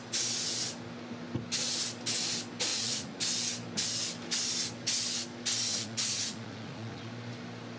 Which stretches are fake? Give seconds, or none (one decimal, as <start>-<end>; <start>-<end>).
2.7-3.2; 5.7-7.1